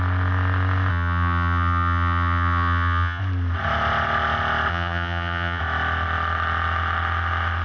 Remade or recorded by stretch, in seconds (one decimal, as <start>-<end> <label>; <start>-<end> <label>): 0.0-0.9 recorded; 0.9-3.2 remade; 3.2-4.7 recorded; 4.7-5.6 remade; 5.6-7.6 recorded